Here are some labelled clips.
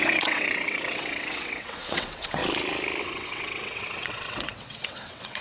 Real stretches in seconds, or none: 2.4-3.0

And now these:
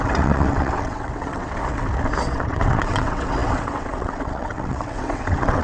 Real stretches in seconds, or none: 1.6-2.2